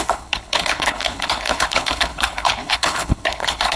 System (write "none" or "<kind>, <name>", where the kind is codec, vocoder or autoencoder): codec, HILCodec